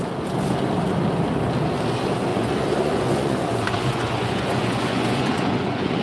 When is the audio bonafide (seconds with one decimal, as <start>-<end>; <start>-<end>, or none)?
0.0-2.3